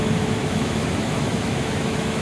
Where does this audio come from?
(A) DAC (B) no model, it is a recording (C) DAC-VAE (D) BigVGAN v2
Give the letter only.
C